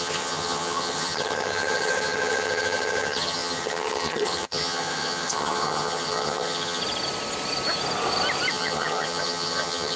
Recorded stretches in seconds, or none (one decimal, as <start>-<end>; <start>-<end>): 6.8-8.5